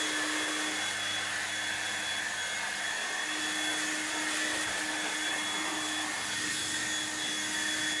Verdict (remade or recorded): recorded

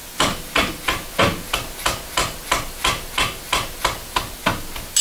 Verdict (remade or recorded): recorded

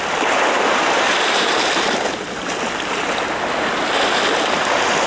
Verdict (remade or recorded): recorded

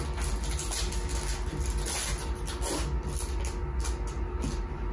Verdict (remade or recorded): recorded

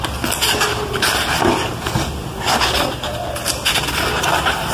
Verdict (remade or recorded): recorded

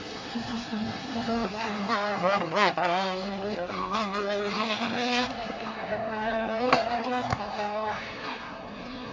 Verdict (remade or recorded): remade